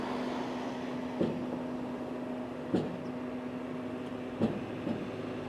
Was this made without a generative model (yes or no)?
yes